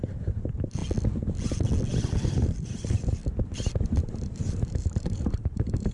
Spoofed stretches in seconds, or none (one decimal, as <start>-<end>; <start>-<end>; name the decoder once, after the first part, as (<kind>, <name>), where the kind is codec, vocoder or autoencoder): 0.0-0.8 (vocoder, BigVGAN v2); 2.3-3.2; 4.3-5.9